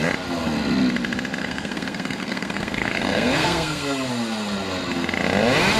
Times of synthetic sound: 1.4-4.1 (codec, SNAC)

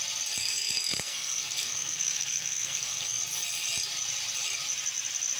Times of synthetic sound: 0.4-3.2 (codec, SNAC)

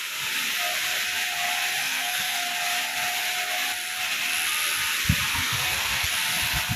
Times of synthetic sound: 1.8-2.4 (codec, SNAC); 5.3-6.1

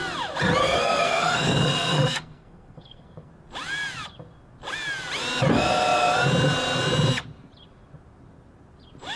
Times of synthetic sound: 0.6-3.3 (codec, SNAC)

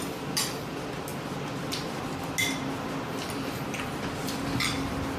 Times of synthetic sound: none

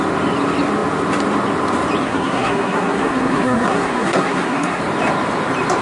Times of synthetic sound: 2.0-4.8 (codec, SNAC)